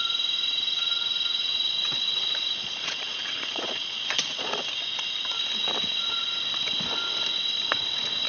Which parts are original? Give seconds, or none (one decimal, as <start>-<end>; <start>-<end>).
0.0-1.5; 4.5-8.3